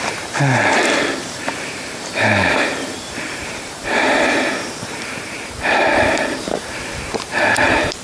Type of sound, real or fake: fake